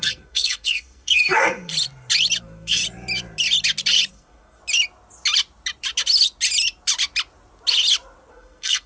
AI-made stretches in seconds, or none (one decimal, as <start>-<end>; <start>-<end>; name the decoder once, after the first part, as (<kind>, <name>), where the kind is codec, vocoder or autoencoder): 0.0-1.7 (codec, SNAC); 2.4-2.8; 4.1-4.6; 8.3-8.9